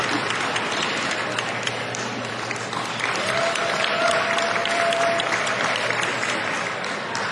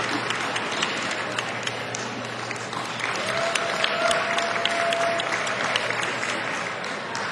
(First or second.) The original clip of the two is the second